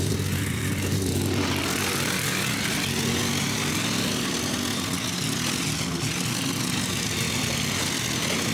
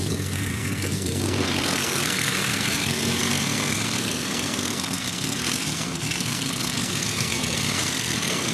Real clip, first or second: first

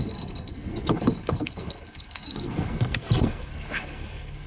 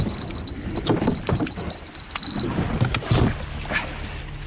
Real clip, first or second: second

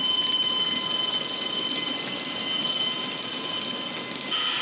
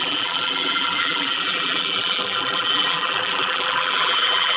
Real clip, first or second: first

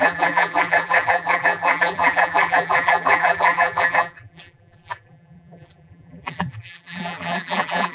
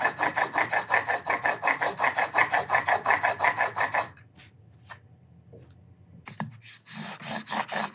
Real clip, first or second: second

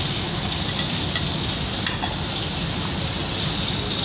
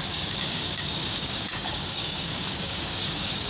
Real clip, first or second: first